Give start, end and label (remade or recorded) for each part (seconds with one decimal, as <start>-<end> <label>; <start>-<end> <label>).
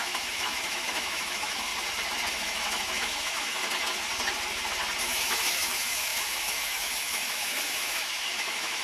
0.0-1.7 remade; 1.7-2.3 recorded; 2.3-3.6 remade; 3.6-5.0 recorded; 5.0-8.8 remade